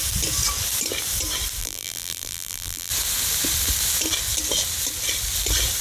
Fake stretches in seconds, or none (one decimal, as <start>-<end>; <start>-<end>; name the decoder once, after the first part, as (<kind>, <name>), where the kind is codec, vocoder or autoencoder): 1.6-2.9 (vocoder, BigVGAN v2)

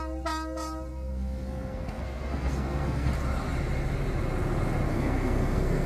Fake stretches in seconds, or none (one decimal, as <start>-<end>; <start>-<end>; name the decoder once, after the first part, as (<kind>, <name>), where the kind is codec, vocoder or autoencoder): 0.9-3.1 (codec, SNAC); 4.9-5.9

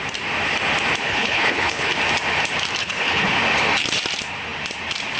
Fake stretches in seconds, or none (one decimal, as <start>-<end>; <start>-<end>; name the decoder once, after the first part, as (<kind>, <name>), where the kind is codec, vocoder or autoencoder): 1.1-1.9 (codec, HILCodec); 2.8-3.3

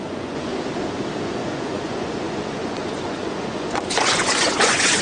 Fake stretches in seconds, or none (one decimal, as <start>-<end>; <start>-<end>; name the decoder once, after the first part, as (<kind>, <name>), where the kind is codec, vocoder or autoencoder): 0.0-0.5 (vocoder, Vocos); 1.2-5.0

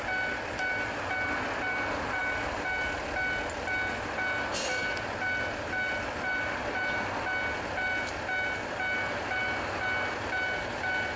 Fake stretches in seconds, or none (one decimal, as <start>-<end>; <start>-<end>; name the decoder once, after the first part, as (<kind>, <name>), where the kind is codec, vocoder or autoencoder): none